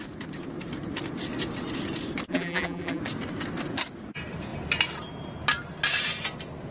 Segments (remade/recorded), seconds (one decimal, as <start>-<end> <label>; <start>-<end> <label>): 0.0-2.3 recorded; 2.3-3.0 remade; 3.0-6.7 recorded